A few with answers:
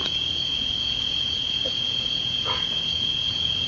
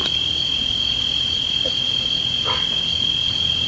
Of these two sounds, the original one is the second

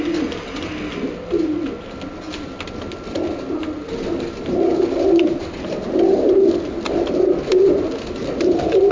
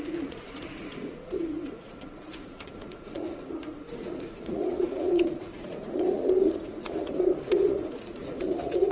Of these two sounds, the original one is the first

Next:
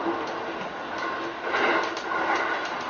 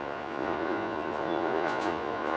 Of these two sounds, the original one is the first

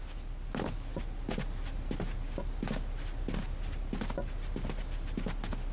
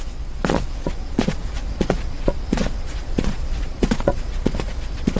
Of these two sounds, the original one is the first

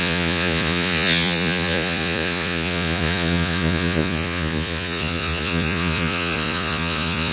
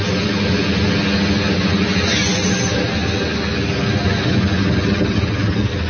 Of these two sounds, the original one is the second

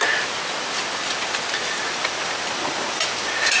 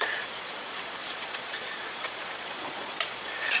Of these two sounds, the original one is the first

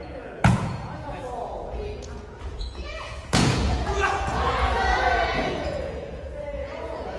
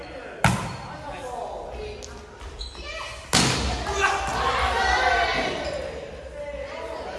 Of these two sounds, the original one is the second